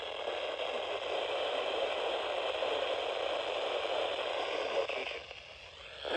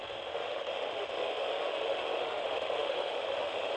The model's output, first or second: second